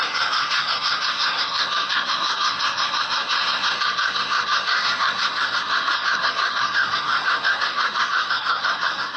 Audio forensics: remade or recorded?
remade